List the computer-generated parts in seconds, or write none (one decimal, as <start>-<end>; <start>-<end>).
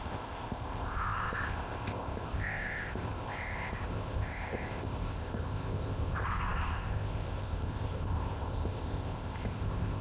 0.0-10.0